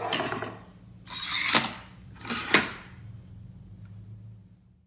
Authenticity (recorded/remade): recorded